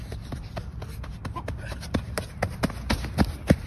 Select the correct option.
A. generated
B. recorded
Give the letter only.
B